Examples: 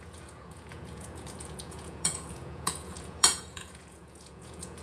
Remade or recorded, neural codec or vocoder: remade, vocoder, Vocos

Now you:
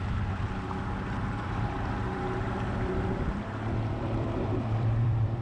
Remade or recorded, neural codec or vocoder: remade, vocoder, BigVGAN v2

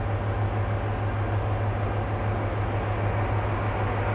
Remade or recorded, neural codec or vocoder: recorded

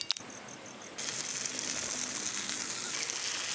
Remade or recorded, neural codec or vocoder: recorded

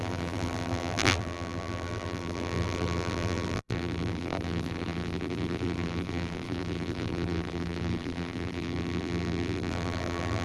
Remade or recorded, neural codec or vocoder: remade, vocoder, BigVGAN v2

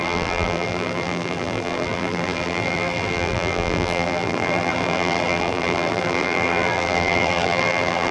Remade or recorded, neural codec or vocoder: remade, vocoder, BigVGAN v2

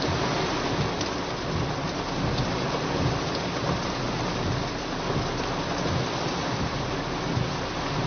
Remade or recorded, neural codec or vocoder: recorded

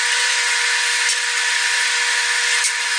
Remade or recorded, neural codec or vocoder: recorded